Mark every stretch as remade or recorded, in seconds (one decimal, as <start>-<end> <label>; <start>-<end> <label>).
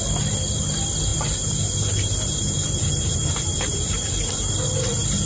0.0-1.1 recorded; 1.1-4.3 remade; 4.3-5.3 recorded